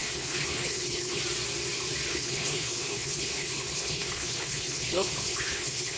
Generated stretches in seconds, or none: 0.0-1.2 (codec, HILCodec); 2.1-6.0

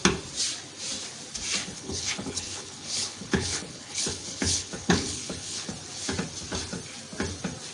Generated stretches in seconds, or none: 1.6-5.7 (codec, HILCodec)

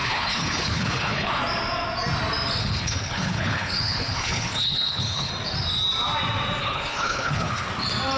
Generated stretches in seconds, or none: 0.0-1.4 (codec, HILCodec); 2.6-5.3; 6.6-7.7

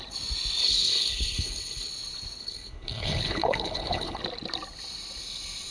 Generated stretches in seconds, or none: 0.6-1.9 (codec, HILCodec); 2.4-4.2